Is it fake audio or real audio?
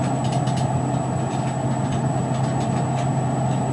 real